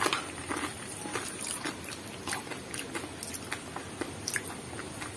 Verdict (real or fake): real